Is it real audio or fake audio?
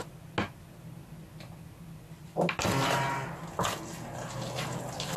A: real